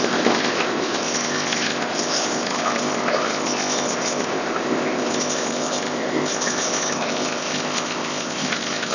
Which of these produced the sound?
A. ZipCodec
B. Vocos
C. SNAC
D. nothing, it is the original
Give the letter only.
A